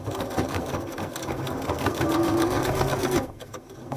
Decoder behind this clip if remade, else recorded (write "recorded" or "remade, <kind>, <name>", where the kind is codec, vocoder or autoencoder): remade, codec, SNAC